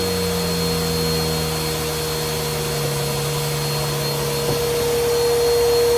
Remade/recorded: recorded